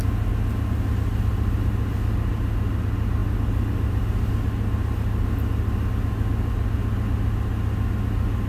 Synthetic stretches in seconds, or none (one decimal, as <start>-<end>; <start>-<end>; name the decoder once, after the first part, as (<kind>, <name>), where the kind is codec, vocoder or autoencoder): none